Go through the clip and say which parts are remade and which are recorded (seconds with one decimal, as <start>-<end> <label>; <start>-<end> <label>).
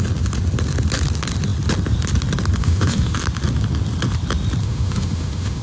0.0-2.6 recorded; 2.6-3.2 remade; 3.2-4.6 recorded; 4.6-5.6 remade